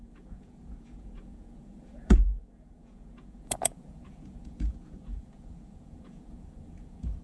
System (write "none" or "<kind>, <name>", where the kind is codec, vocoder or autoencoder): vocoder, Vocos